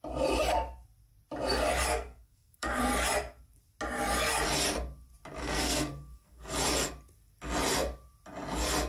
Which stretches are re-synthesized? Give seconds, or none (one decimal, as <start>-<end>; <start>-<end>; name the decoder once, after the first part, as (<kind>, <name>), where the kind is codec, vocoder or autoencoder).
1.9-2.8 (codec, SNAC); 5.4-6.5